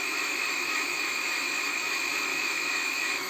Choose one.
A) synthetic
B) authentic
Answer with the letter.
A